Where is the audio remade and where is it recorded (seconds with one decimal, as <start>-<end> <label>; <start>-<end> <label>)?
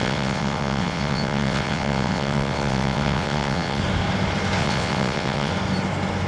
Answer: 0.0-3.8 remade; 3.8-4.6 recorded; 4.6-5.5 remade; 5.5-6.3 recorded